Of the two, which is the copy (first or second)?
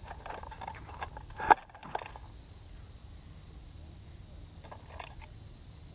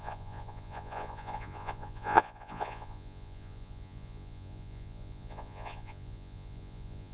second